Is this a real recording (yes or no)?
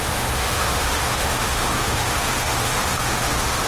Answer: no